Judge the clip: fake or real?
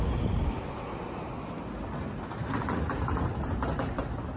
real